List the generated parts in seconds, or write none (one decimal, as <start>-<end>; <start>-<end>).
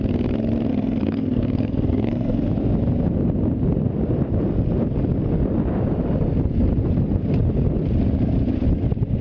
0.7-2.5